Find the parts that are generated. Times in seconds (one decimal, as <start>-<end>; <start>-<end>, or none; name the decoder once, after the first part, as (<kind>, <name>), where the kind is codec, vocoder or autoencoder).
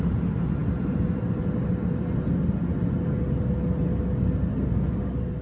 none